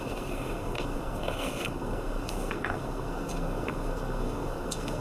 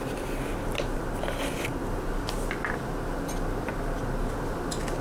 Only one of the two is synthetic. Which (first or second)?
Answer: first